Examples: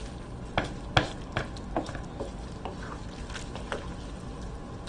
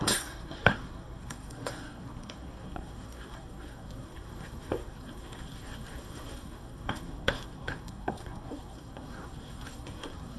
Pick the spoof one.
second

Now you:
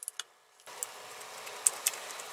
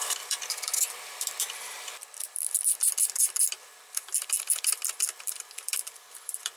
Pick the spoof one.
second